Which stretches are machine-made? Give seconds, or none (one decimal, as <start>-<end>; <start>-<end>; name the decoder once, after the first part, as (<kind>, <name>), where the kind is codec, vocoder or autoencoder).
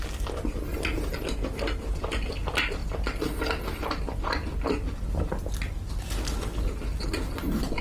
none